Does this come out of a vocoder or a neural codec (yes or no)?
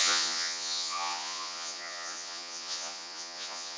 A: yes